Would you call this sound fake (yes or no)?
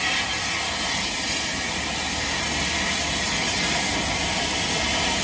no